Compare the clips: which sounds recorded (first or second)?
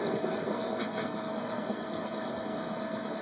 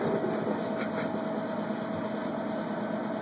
second